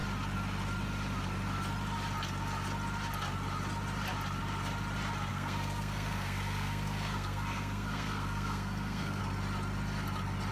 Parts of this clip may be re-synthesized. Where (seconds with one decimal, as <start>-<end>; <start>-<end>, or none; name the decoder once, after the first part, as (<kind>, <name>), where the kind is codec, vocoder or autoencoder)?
5.3-9.2 (codec, SNAC)